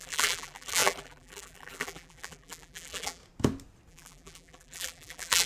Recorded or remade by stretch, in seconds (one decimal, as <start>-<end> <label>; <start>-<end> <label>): 0.0-3.2 remade; 3.2-3.9 recorded; 3.9-5.5 remade